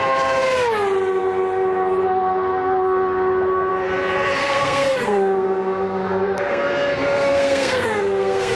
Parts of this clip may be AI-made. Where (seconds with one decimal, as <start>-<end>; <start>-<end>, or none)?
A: 4.4-8.6